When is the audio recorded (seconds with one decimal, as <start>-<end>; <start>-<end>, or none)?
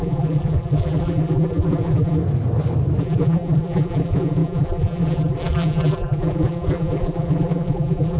2.2-3.0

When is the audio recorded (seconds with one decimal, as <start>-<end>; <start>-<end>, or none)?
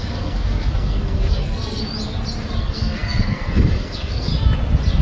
1.8-2.6; 4.3-5.0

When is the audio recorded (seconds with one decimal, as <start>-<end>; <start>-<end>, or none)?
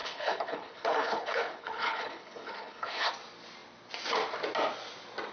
3.1-5.3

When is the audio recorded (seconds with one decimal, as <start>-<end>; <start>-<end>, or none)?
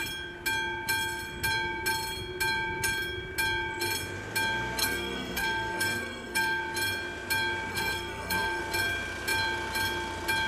0.0-4.8; 6.6-7.7; 8.6-10.5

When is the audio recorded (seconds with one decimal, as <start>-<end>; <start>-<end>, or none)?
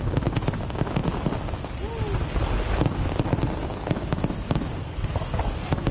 0.0-4.8; 5.5-5.9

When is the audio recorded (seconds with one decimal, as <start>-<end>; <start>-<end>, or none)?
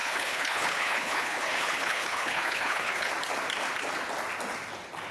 3.1-5.1